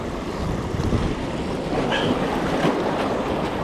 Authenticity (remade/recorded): recorded